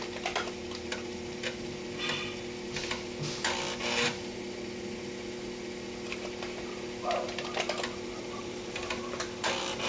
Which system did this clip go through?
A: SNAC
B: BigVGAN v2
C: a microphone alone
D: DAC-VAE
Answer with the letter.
C